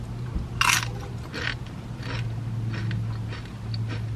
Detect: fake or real real